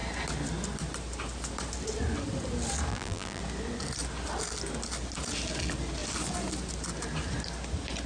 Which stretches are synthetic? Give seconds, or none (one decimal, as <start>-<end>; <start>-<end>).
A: 2.9-3.4